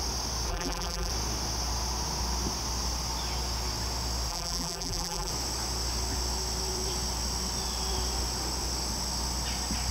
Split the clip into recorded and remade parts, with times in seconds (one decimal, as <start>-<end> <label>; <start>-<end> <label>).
0.0-0.5 recorded; 0.5-1.1 remade; 1.1-4.3 recorded; 4.3-5.3 remade; 5.3-9.9 recorded